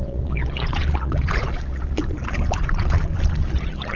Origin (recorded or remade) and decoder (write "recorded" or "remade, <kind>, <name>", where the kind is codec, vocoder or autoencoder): remade, vocoder, Vocos